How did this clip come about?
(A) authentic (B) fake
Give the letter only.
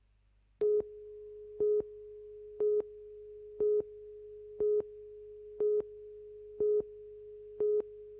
A